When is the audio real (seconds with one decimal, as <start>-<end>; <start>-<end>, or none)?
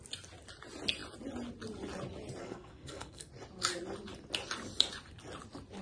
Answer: 0.0-2.4; 3.3-5.8